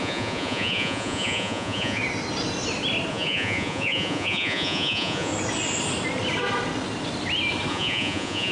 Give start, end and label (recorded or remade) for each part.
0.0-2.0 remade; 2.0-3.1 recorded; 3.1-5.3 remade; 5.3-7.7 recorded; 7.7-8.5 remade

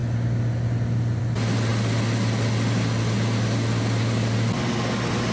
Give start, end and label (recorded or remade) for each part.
0.0-5.3 recorded

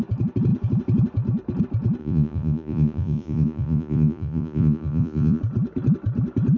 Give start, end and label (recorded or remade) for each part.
0.0-2.0 recorded; 2.0-5.4 remade; 5.4-6.6 recorded

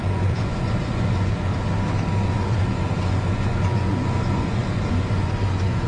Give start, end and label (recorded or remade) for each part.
0.0-1.5 remade; 1.5-2.2 recorded; 2.2-5.9 remade

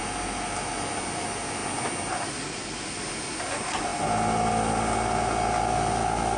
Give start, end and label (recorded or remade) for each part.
0.0-6.4 recorded

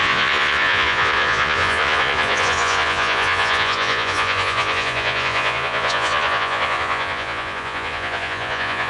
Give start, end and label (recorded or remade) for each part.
0.0-8.9 remade

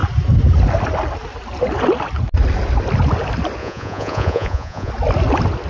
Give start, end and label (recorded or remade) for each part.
0.0-3.6 recorded; 3.6-4.9 remade; 4.9-5.7 recorded